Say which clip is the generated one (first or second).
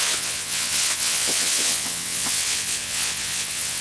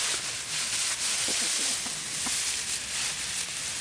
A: first